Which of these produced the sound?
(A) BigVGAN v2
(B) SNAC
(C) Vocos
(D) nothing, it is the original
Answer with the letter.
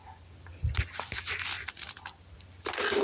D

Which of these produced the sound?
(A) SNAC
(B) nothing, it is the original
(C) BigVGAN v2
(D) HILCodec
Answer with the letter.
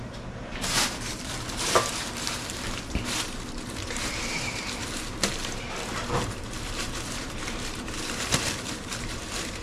C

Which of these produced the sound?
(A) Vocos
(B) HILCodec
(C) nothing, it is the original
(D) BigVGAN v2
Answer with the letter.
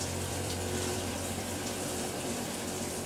D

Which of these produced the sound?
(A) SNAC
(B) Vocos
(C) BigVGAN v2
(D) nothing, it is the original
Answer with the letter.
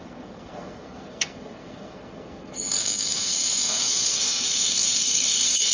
A